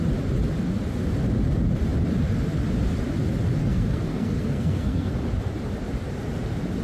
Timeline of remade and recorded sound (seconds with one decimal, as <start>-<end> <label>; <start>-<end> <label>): 0.0-3.6 recorded; 3.6-5.1 remade; 5.1-6.8 recorded